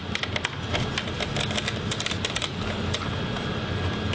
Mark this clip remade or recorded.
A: recorded